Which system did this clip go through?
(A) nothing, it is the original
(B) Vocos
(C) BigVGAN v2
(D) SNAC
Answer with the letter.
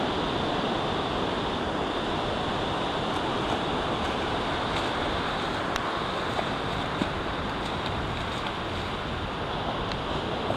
A